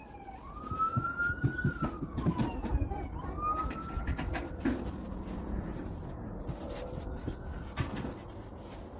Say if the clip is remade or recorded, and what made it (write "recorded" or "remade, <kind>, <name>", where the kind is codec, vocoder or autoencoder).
recorded